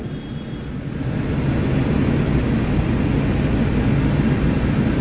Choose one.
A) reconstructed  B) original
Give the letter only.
B